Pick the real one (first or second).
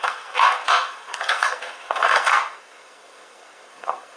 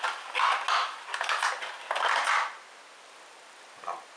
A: second